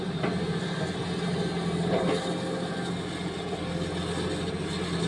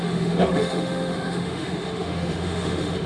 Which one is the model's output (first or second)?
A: second